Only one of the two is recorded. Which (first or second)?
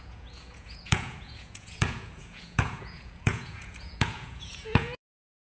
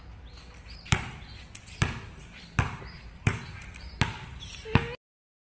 second